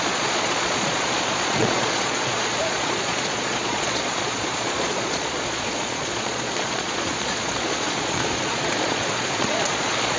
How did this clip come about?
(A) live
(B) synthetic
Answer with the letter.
B